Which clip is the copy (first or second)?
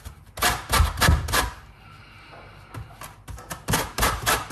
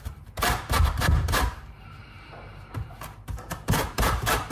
second